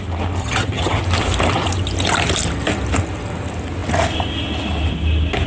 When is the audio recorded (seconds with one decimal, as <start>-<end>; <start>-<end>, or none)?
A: 0.0-0.4; 1.0-5.5